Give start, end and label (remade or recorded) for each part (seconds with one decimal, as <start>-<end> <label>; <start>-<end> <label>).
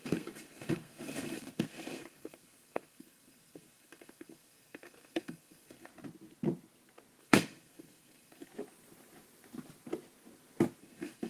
0.0-5.9 remade; 5.9-7.2 recorded; 7.2-8.5 remade; 8.5-10.8 recorded; 10.8-11.3 remade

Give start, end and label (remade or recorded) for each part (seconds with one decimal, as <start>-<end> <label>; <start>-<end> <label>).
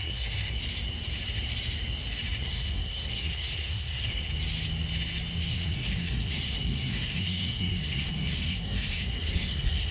0.0-0.6 remade; 0.6-2.4 recorded; 2.4-4.3 remade; 4.3-5.5 recorded; 5.5-9.9 remade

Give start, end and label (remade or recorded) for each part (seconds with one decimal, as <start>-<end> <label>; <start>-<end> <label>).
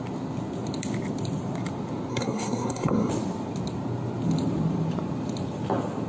0.0-2.1 recorded; 2.1-3.1 remade; 3.1-6.1 recorded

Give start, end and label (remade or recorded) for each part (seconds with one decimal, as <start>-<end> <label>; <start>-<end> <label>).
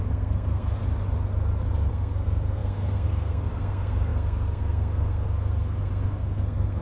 0.0-0.8 remade; 0.8-1.9 recorded; 1.9-6.8 remade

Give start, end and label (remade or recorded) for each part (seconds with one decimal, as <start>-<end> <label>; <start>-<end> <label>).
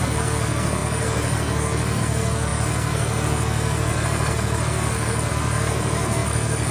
0.0-6.7 remade